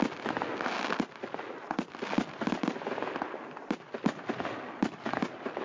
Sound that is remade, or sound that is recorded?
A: recorded